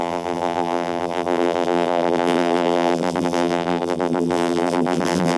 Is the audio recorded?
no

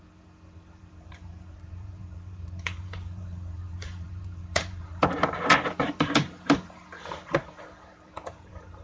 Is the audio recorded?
no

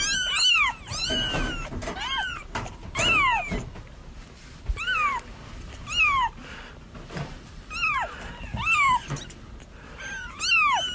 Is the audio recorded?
yes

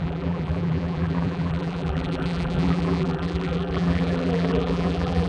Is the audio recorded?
no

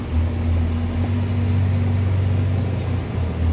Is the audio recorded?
yes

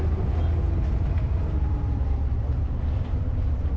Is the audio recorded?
yes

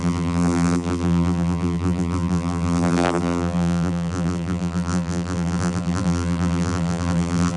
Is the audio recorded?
no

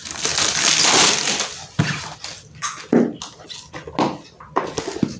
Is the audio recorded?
yes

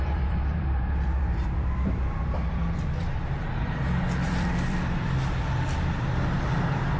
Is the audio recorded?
no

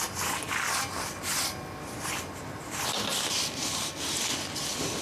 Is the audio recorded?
yes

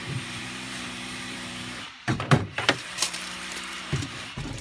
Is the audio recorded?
no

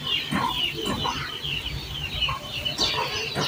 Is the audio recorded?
no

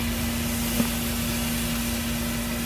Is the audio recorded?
yes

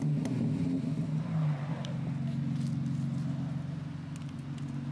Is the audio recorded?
yes